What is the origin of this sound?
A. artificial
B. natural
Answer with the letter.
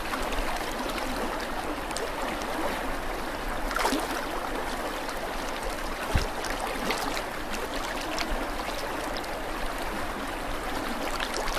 B